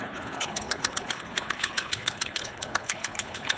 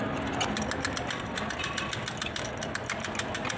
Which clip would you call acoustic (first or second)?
second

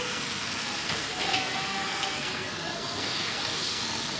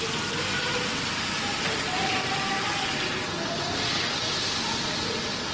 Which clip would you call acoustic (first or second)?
second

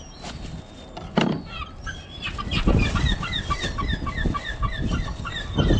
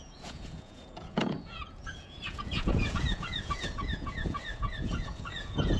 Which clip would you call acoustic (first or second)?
first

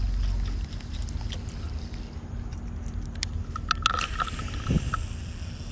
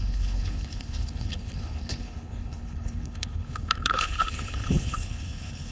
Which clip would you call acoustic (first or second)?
first